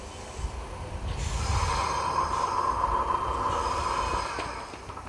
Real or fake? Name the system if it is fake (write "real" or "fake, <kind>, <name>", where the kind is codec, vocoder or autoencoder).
real